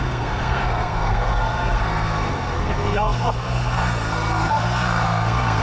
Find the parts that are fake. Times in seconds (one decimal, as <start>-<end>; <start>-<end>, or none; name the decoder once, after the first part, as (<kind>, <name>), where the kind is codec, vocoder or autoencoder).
0.0-5.6 (codec, SNAC)

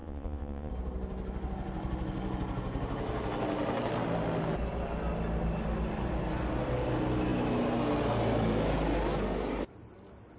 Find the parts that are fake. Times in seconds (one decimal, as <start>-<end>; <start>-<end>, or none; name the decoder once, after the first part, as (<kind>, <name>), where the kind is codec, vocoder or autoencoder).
0.0-0.7 (vocoder, Vocos)